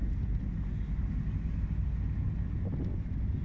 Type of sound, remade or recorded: recorded